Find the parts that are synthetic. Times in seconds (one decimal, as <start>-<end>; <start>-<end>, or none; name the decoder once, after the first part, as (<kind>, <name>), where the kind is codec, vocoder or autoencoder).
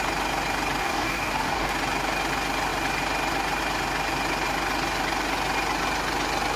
0.8-1.7 (codec, DAC)